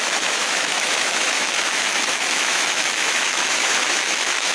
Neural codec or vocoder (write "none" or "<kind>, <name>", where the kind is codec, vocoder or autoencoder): autoencoder, DAC-VAE